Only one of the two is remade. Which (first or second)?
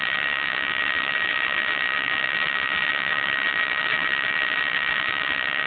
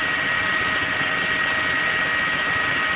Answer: first